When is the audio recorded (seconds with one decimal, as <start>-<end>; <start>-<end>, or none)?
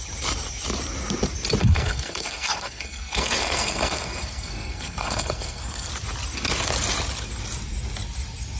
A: 0.0-1.6; 5.9-8.6